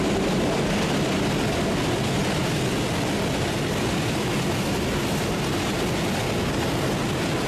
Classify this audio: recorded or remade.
recorded